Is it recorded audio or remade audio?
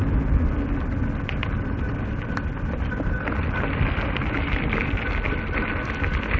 recorded